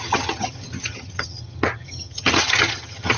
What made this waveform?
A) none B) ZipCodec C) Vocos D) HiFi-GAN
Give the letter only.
D